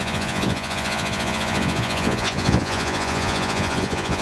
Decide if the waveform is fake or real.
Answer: fake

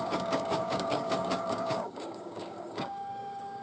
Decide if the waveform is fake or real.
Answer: fake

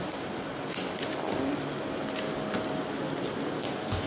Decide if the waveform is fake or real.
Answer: real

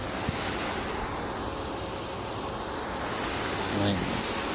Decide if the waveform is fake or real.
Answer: real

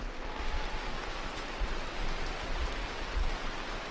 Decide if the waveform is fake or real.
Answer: fake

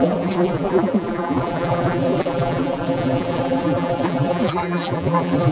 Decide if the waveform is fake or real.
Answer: fake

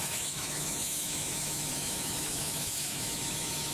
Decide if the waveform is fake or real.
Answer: fake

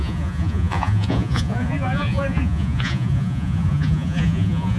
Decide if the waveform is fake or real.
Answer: fake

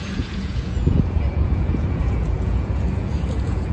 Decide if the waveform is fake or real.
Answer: fake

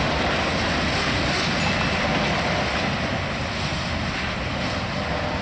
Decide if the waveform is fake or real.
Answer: real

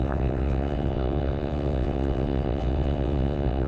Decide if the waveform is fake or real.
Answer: fake